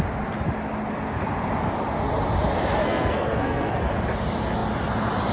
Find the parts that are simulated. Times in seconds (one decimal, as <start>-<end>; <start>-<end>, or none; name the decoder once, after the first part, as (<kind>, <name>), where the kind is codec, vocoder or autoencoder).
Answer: 2.8-3.7 (codec, SNAC)